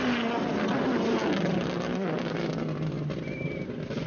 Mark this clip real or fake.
real